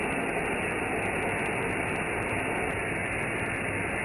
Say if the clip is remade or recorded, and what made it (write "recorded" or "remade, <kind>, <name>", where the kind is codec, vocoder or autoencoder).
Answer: recorded